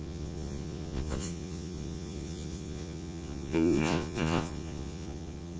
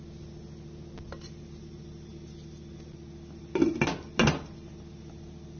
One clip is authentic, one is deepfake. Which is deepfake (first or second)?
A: first